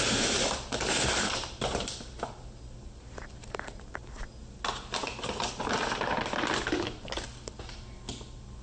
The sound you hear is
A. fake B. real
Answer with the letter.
B